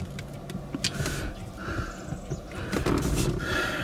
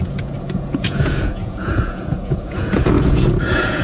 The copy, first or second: second